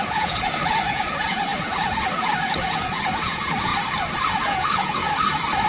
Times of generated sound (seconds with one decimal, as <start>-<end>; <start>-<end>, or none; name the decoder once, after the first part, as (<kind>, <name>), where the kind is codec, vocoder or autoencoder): 0.0-3.7 (vocoder, Vocos); 4.3-5.0

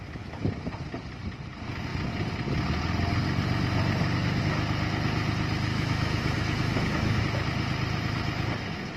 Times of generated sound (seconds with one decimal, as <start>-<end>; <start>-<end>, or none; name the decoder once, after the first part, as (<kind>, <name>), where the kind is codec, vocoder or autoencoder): 5.7-7.2 (autoencoder, DAC-VAE)

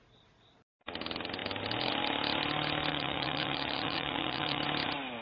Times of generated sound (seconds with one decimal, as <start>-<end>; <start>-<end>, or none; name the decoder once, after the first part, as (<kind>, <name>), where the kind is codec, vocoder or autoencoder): 2.9-4.6 (vocoder, Vocos)

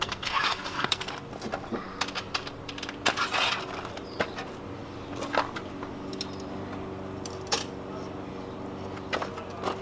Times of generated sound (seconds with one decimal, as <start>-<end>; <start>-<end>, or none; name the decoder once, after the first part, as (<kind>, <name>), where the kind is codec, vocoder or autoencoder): 0.0-1.1 (codec, SNAC)

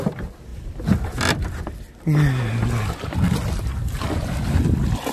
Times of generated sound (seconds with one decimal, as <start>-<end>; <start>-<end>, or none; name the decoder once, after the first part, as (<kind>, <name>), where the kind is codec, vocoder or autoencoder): none

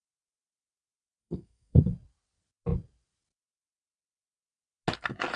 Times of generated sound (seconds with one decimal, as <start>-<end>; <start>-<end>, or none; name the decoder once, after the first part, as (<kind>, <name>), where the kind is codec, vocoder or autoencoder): 1.2-1.8 (codec, SNAC)

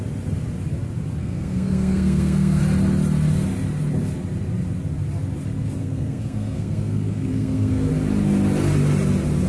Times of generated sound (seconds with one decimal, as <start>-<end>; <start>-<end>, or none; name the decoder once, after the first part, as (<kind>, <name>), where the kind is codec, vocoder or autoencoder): 1.2-2.6 (codec, SNAC); 5.8-7.9

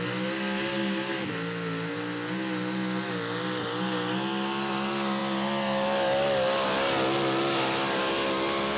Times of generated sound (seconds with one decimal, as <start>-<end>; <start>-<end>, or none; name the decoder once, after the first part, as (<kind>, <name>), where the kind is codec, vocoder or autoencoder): none